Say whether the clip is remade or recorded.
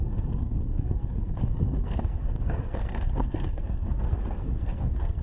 remade